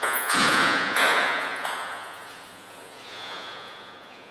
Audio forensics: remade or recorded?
remade